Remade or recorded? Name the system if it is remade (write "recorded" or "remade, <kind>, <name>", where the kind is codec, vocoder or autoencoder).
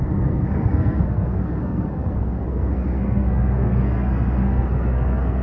remade, codec, SNAC